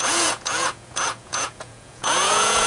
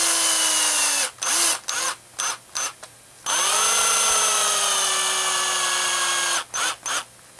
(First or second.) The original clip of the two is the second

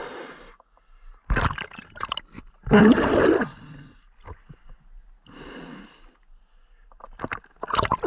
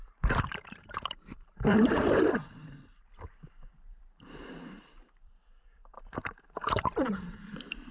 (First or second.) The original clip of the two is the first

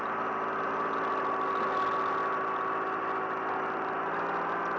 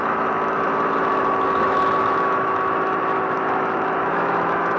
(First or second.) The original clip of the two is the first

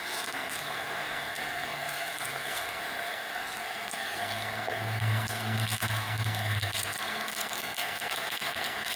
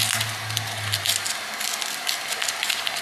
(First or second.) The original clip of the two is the second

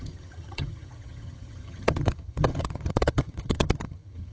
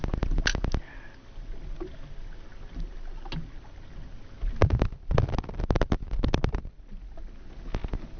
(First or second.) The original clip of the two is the second